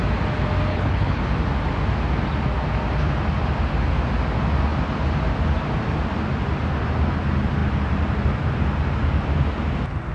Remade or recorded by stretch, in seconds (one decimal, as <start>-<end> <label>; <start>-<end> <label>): 0.0-0.7 recorded; 0.7-1.2 remade; 1.2-10.1 recorded